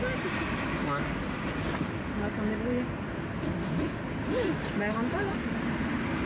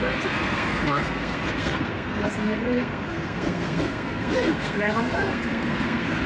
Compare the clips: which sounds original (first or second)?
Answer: first